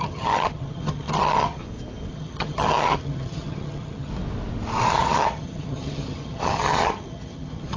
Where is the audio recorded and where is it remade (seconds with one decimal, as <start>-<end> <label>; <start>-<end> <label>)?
0.0-1.6 remade; 1.6-2.1 recorded; 2.1-4.1 remade; 4.1-4.9 recorded; 4.9-7.8 remade